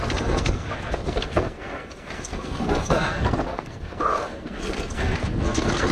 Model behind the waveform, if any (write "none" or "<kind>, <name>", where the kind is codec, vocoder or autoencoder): codec, SNAC